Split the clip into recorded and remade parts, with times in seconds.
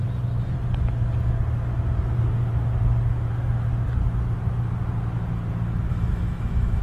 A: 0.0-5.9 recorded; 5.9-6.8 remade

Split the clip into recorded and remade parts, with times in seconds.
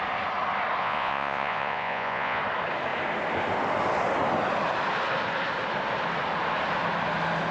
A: 0.0-0.8 recorded; 0.8-2.4 remade; 2.4-7.5 recorded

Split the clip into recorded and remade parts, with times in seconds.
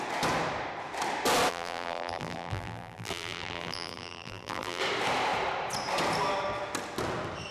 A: 0.0-1.5 recorded; 1.5-4.8 remade; 4.8-7.5 recorded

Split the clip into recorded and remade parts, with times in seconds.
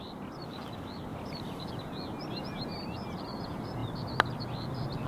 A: 0.0-1.1 recorded; 1.1-1.6 remade; 1.6-3.8 recorded; 3.8-4.4 remade; 4.4-5.1 recorded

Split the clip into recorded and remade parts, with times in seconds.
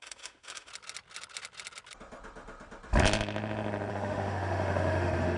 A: 0.0-0.7 remade; 0.7-3.9 recorded; 3.9-5.4 remade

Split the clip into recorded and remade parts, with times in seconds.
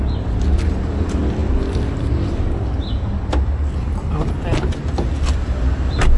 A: 0.0-6.2 recorded